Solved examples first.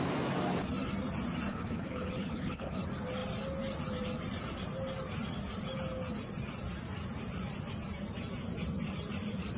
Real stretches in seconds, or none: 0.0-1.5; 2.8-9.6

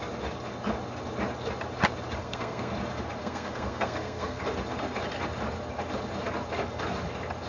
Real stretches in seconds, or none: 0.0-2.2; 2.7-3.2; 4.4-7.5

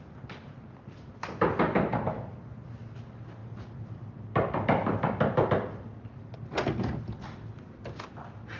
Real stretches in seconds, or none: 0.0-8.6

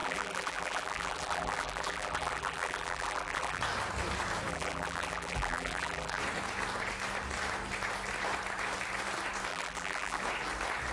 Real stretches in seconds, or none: 3.6-4.5; 6.2-9.5; 10.2-10.9